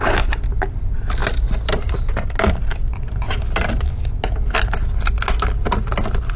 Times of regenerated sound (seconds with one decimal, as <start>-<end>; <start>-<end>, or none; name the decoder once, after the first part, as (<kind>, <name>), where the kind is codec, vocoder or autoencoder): none